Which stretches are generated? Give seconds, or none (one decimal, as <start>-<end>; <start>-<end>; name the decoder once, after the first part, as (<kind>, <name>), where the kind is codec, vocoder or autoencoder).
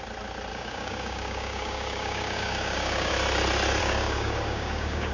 0.5-3.1 (codec, DAC); 3.8-5.1